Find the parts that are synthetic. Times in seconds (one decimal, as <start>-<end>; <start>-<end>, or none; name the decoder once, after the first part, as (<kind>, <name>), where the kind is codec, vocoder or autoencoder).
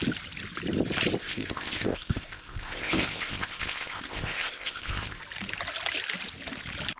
1.2-5.2 (codec, ZipCodec)